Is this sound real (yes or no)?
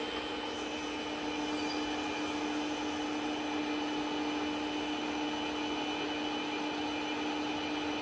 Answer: yes